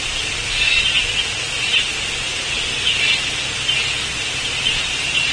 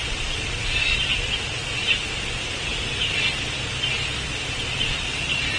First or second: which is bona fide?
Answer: first